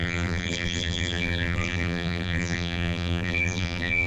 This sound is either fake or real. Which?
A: fake